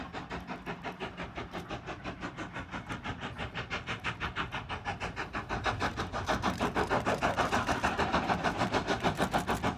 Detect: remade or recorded recorded